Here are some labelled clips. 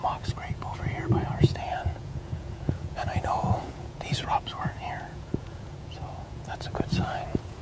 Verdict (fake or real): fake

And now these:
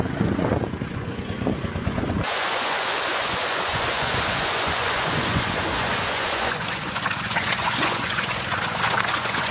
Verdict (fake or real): fake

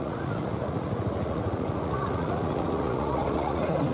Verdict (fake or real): fake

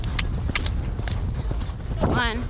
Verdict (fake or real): real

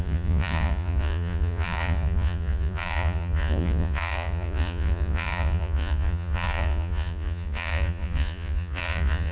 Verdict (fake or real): fake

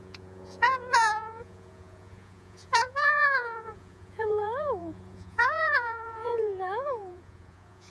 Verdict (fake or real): fake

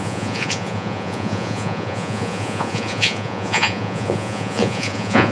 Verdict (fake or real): fake